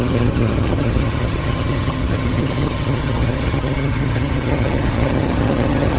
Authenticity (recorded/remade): remade